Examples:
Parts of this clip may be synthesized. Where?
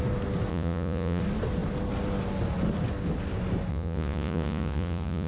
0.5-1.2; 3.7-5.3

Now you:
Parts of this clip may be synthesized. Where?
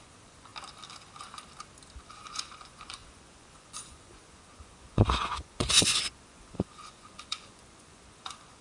0.0-0.5; 2.0-8.6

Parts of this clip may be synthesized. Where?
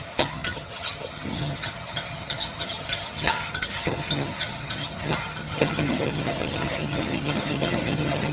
0.0-8.3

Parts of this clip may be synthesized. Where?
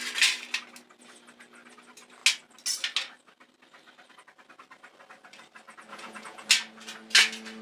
5.9-6.5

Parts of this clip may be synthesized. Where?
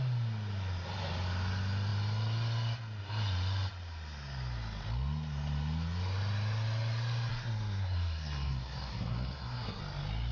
7.3-9.8